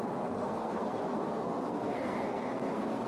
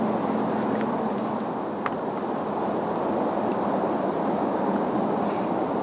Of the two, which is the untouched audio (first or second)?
second